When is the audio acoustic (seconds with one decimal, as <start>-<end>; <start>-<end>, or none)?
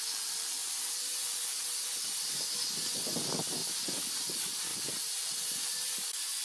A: 0.0-6.4